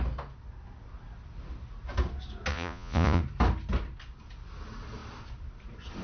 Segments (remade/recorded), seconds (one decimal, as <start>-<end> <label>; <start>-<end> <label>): 0.0-2.5 recorded; 2.5-3.2 remade; 3.2-6.0 recorded